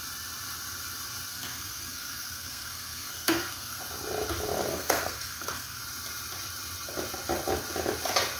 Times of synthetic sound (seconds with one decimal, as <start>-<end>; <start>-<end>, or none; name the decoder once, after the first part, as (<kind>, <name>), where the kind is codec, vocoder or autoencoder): 1.3-3.8 (codec, SNAC); 4.7-5.8